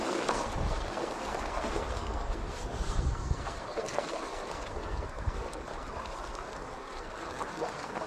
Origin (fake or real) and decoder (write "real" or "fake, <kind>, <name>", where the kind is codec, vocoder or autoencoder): fake, codec, SNAC